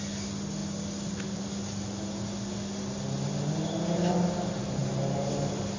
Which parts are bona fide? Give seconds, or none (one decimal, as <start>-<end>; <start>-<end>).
0.0-5.8